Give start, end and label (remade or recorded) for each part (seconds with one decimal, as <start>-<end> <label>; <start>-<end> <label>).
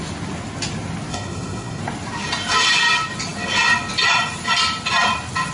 0.0-1.1 recorded; 1.1-1.8 remade; 1.8-5.5 recorded